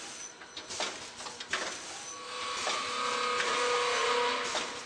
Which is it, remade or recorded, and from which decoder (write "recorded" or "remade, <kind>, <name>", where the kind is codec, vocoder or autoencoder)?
recorded